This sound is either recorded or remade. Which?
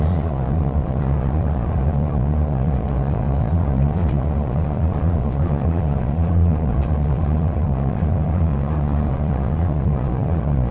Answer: remade